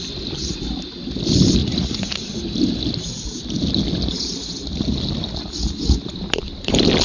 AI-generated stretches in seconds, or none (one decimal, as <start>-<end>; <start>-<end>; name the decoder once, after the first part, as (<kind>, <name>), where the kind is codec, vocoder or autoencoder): 1.6-2.3 (vocoder, Vocos)